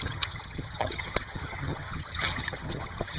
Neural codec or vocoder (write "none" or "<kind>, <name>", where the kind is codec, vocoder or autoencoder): vocoder, HiFi-GAN